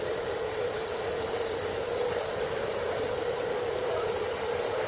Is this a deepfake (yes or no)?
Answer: yes